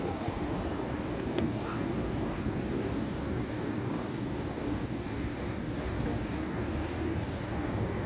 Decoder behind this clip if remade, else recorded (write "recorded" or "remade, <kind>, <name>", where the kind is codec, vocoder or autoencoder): remade, codec, DAC